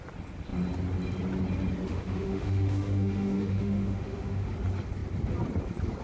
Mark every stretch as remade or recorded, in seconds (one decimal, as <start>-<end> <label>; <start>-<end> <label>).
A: 0.0-1.9 recorded; 1.9-4.5 remade; 4.5-6.0 recorded